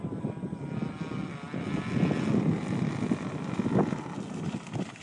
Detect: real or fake real